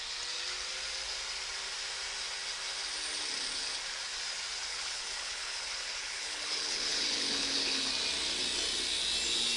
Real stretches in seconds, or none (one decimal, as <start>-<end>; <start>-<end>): 0.0-4.7; 7.9-9.6